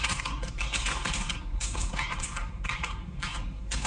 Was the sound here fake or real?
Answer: fake